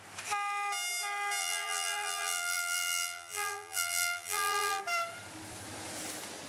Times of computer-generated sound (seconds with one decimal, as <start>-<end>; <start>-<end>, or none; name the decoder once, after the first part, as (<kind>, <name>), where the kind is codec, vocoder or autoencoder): 1.4-4.8 (vocoder, BigVGAN v2)